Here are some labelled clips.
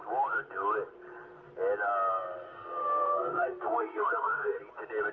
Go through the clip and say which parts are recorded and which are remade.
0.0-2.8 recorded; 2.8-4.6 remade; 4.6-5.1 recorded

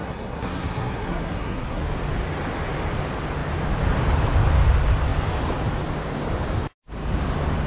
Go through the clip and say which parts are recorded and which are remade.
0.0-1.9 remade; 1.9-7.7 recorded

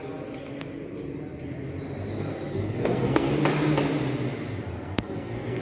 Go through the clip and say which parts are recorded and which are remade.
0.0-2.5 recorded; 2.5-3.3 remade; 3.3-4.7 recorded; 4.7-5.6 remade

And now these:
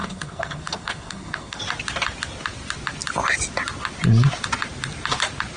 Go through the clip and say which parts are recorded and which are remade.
0.0-1.6 remade; 1.6-5.6 recorded

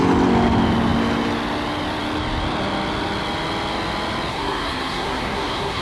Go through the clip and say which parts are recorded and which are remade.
0.0-4.3 recorded; 4.3-5.8 remade